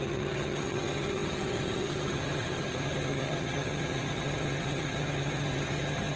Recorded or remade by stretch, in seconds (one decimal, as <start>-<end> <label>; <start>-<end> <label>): 0.0-6.2 remade